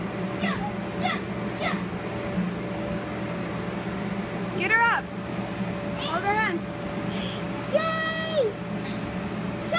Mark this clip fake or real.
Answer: real